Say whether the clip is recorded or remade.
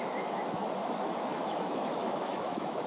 remade